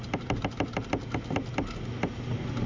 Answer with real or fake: real